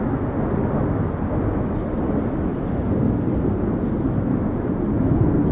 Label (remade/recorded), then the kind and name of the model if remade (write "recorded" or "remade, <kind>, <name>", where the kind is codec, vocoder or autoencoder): recorded